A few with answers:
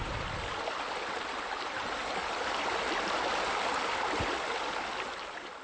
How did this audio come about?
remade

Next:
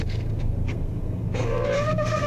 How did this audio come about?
remade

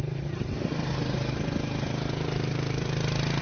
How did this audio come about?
recorded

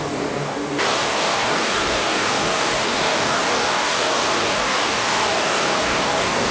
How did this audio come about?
remade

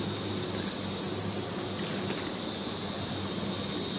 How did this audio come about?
recorded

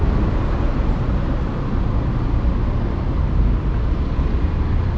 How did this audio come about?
recorded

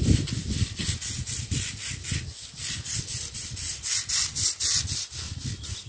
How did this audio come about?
recorded